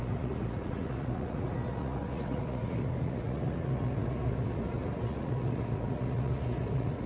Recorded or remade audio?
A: remade